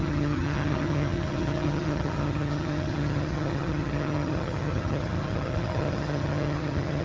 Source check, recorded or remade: remade